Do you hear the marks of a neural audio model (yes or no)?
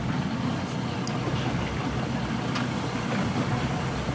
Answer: no